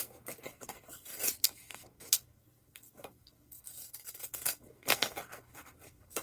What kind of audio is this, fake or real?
fake